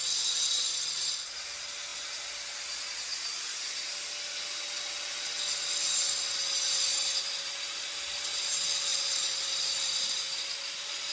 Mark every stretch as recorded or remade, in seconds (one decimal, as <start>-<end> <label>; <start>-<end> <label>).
0.0-6.9 recorded; 6.9-7.5 remade; 7.5-8.9 recorded; 8.9-10.2 remade; 10.2-11.1 recorded

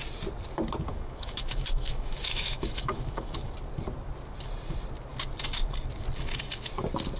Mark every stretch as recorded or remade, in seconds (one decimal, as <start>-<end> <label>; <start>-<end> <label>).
0.0-0.9 recorded; 0.9-3.5 remade; 3.5-7.2 recorded

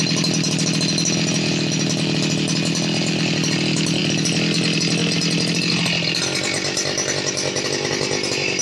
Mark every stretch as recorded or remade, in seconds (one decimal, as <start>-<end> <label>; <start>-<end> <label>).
0.0-8.6 recorded

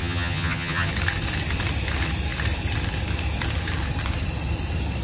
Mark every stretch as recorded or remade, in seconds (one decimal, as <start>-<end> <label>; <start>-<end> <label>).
0.0-0.9 remade; 0.9-5.0 recorded

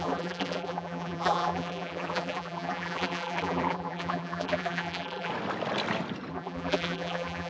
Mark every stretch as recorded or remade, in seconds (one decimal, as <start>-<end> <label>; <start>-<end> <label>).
0.0-5.3 remade; 5.3-6.3 recorded; 6.3-7.5 remade

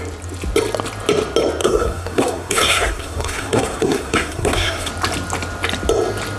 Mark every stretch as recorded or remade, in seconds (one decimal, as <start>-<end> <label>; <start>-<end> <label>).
0.0-1.6 recorded; 1.6-4.9 remade; 4.9-6.4 recorded

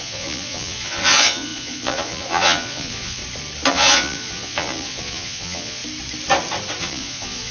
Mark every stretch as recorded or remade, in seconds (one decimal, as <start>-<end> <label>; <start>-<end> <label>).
0.0-3.2 remade; 3.2-3.7 recorded; 3.7-5.8 remade; 5.8-6.8 recorded; 6.8-7.5 remade

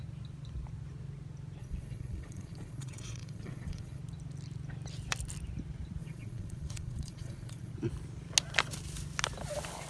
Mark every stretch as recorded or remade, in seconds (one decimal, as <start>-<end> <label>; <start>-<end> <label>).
0.0-1.6 recorded; 1.6-4.0 remade; 4.0-6.0 recorded; 6.0-7.7 remade; 7.7-9.9 recorded